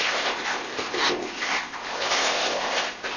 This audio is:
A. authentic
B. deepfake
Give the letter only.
B